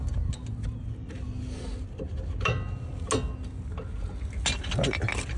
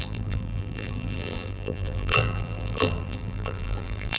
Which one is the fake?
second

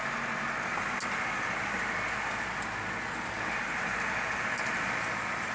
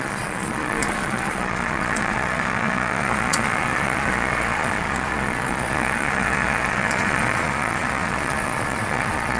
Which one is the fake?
second